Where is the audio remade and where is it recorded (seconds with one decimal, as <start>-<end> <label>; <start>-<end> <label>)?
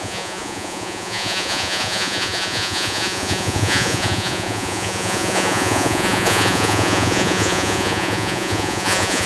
0.0-9.3 remade